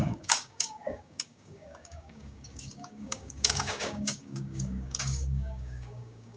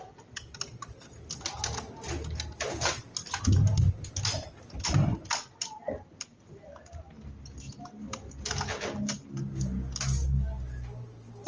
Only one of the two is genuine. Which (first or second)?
second